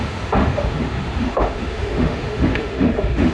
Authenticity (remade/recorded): remade